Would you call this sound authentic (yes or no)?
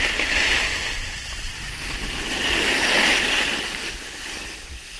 yes